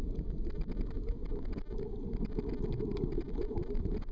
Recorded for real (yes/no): yes